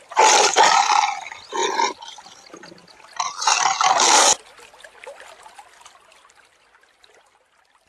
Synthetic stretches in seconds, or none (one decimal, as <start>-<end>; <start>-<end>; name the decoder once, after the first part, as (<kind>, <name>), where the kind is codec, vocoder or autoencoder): none